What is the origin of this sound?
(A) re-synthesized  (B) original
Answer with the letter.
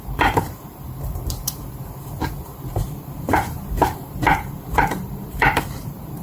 A